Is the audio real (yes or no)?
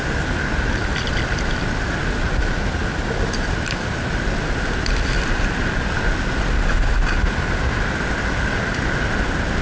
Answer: yes